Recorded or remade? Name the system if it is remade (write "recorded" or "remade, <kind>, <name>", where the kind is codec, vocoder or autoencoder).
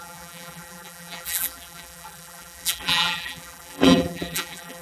remade, vocoder, BigVGAN v2